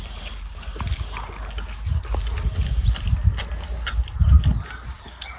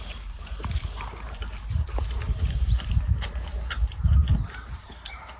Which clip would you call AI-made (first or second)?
second